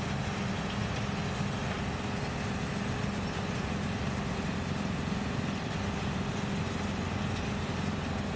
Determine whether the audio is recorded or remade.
recorded